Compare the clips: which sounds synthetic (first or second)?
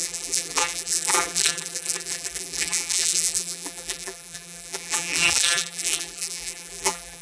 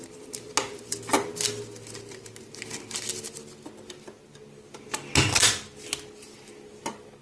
first